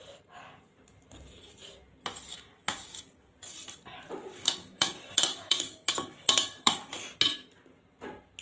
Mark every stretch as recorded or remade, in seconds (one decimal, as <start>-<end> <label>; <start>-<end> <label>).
0.0-2.3 recorded; 2.3-3.3 remade; 3.3-4.3 recorded; 4.3-6.9 remade; 6.9-8.4 recorded